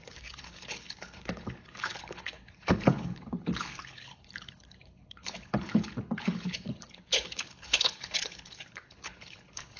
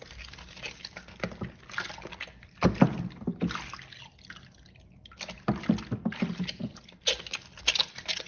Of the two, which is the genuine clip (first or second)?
second